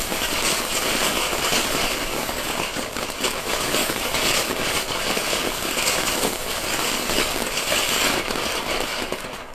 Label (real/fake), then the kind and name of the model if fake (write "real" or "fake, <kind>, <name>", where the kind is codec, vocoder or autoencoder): fake, codec, DAC